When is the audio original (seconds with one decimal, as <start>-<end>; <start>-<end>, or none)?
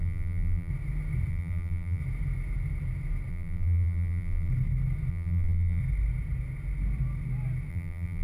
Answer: 0.7-1.3; 2.0-3.3; 4.5-5.1; 5.8-7.7